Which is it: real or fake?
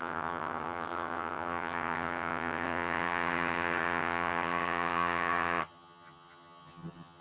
fake